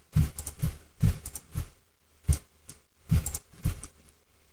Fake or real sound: fake